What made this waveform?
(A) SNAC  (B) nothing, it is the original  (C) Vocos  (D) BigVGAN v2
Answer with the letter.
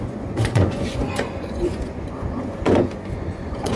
C